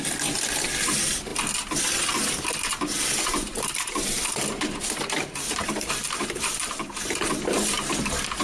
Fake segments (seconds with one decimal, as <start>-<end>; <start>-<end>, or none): 3.5-7.3